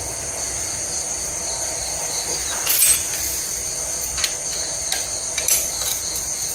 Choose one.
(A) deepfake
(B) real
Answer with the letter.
B